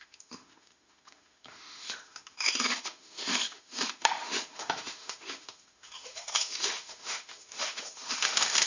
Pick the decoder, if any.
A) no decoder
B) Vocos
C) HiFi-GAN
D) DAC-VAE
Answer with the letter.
D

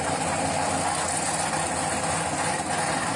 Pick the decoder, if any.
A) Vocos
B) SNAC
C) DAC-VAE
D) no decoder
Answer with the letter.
D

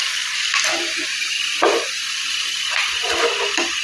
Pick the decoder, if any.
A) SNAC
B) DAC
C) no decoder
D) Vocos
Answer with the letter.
C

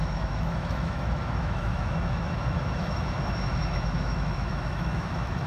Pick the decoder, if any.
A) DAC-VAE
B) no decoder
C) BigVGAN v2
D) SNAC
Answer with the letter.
A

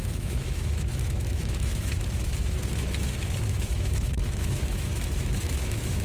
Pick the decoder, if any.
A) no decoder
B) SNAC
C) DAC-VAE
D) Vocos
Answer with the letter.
C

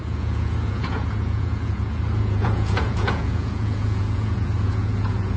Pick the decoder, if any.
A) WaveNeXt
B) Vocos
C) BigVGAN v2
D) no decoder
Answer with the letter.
B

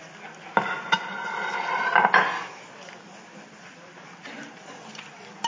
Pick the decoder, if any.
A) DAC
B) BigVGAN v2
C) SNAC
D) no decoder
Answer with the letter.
D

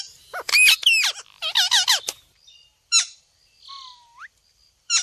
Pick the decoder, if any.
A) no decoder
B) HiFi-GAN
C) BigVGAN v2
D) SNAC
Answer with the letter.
A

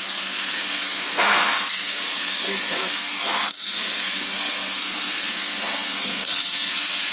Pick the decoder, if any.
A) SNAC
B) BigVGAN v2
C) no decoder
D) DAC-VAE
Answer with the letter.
A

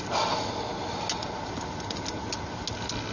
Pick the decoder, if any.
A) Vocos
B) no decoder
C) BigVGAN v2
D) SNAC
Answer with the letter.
B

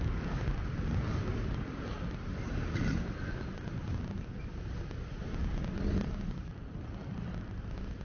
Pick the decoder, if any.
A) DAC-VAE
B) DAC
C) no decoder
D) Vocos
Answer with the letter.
C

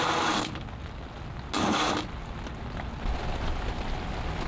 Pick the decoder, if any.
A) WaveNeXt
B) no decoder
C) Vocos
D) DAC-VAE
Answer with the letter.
B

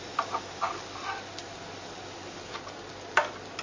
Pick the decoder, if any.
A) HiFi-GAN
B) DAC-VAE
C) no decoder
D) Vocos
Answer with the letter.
C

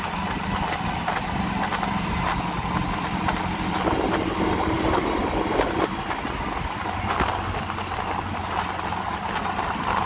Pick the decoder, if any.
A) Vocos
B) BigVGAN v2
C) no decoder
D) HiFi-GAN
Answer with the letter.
C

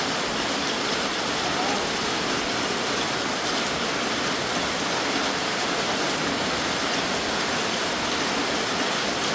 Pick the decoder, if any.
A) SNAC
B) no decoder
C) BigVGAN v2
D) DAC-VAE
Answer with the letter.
B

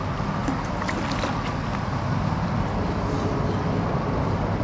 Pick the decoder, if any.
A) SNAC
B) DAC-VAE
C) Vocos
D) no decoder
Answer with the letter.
D